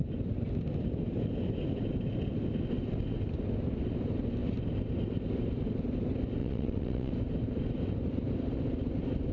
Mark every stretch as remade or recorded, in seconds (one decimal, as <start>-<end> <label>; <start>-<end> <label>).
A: 0.0-6.4 recorded; 6.4-7.1 remade; 7.1-9.3 recorded